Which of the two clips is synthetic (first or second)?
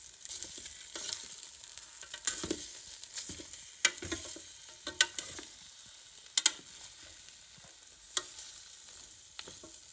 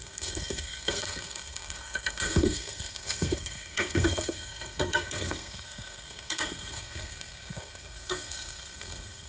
second